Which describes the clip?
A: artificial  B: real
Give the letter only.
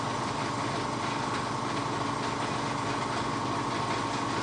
B